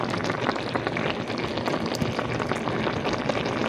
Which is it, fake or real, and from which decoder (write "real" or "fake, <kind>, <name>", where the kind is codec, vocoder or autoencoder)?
real